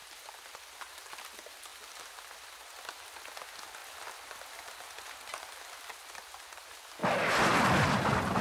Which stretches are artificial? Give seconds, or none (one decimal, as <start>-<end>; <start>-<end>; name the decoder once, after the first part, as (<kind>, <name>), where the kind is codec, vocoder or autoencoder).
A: 0.0-0.9 (vocoder, BigVGAN v2); 1.7-2.5